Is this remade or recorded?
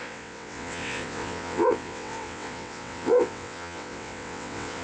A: remade